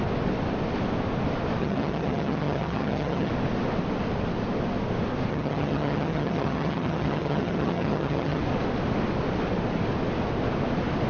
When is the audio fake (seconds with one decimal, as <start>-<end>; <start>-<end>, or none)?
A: 1.6-3.3; 5.3-8.4